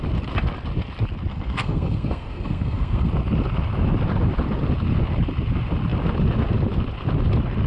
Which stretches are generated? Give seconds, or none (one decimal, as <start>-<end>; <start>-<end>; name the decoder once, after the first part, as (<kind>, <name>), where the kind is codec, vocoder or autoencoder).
1.3-3.1 (codec, SNAC)